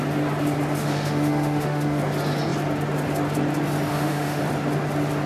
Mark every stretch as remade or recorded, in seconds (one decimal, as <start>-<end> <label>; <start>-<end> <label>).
0.0-0.8 recorded; 0.8-2.0 remade; 2.0-3.9 recorded; 3.9-4.4 remade; 4.4-5.3 recorded